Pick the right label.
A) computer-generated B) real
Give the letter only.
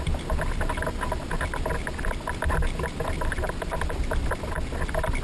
B